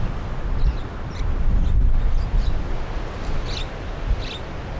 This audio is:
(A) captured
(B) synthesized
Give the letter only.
A